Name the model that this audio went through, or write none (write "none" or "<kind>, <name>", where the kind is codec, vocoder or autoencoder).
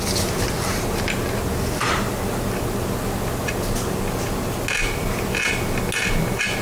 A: none